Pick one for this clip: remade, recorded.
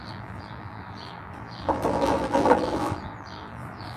remade